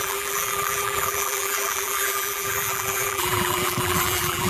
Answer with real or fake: fake